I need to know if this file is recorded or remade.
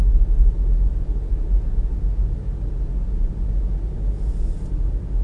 recorded